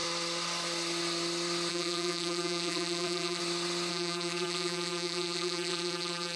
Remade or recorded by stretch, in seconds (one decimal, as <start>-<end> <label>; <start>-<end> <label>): 0.0-1.7 recorded; 1.7-3.4 remade; 3.4-3.9 recorded; 3.9-6.4 remade